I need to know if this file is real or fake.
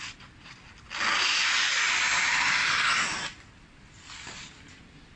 real